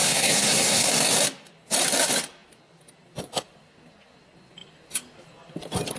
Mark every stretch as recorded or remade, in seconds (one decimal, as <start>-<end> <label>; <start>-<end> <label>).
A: 0.0-0.9 remade; 0.9-6.0 recorded

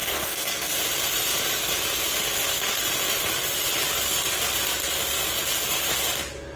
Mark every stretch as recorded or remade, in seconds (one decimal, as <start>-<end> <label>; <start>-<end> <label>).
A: 0.0-0.8 remade; 0.8-6.6 recorded